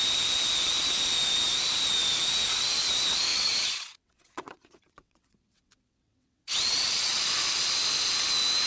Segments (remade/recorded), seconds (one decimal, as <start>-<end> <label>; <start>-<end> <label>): 0.0-3.3 recorded; 3.3-7.2 remade; 7.2-8.7 recorded